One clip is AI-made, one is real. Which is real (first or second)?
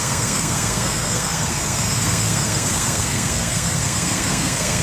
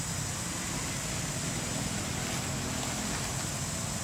second